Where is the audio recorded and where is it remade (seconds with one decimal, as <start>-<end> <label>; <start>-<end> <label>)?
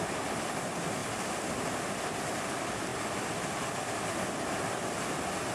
0.0-5.5 recorded